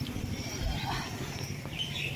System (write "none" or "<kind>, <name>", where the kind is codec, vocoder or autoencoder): none